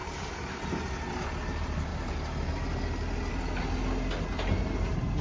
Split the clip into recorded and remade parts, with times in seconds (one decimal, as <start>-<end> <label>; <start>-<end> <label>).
0.0-5.2 recorded